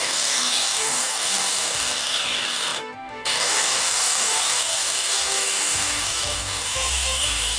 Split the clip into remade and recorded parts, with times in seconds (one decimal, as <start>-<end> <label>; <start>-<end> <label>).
0.0-7.6 remade